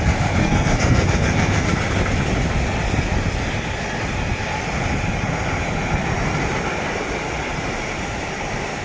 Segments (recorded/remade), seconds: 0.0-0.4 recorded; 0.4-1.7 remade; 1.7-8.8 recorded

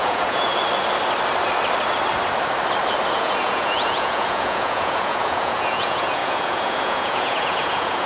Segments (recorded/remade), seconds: 0.0-0.5 remade; 0.5-3.1 recorded; 3.1-8.1 remade